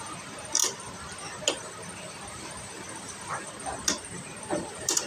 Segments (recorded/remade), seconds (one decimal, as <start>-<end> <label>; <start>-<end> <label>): 0.0-5.1 recorded